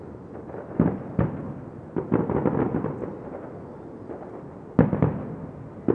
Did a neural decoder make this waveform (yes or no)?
no